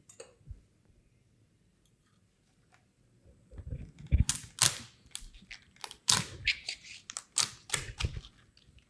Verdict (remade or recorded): recorded